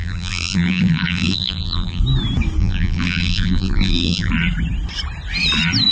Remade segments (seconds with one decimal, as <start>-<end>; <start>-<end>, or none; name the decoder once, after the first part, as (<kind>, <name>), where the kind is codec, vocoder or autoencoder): 0.0-2.0 (vocoder, BigVGAN v2); 2.6-4.3

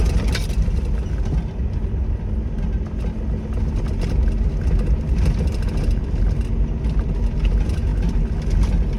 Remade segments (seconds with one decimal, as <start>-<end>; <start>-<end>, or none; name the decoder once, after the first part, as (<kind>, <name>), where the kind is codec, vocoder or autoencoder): none

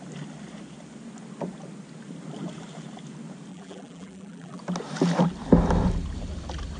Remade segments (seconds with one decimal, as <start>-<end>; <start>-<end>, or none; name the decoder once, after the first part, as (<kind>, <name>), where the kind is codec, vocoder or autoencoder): 3.5-4.6 (vocoder, BigVGAN v2)

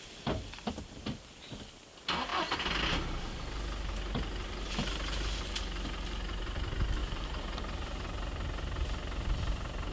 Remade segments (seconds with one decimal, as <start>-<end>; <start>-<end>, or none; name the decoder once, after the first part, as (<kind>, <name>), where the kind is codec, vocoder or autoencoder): 7.0-7.6 (vocoder, BigVGAN v2)

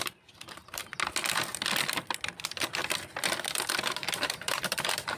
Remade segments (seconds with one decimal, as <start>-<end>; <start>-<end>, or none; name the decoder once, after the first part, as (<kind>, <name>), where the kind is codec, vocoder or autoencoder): 0.0-0.8 (vocoder, BigVGAN v2); 2.3-2.8; 3.8-5.2

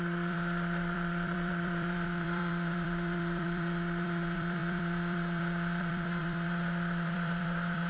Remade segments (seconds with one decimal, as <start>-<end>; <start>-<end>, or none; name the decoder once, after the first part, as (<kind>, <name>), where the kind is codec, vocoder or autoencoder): 0.0-7.9 (vocoder, BigVGAN v2)